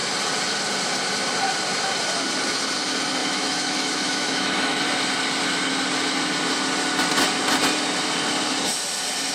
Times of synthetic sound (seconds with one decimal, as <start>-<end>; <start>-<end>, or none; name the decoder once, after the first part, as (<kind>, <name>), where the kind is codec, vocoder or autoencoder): 3.2-4.8 (autoencoder, DAC-VAE)